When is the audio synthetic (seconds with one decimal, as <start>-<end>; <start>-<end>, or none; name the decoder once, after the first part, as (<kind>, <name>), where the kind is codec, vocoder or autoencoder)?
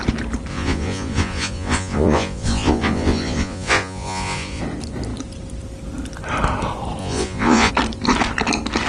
0.5-4.6 (vocoder, Vocos); 7.0-7.7